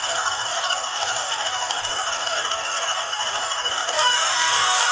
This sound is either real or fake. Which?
fake